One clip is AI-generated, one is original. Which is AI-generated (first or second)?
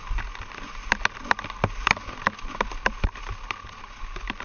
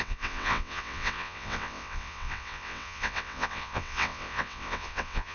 second